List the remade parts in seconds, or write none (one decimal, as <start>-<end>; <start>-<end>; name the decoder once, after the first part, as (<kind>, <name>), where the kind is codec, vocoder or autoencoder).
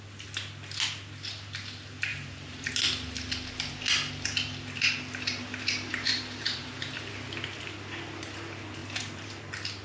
2.1-2.7 (vocoder, BigVGAN v2); 6.1-7.1; 8.8-9.4